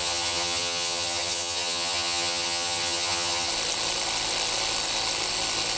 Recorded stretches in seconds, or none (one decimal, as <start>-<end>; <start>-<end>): 3.5-5.8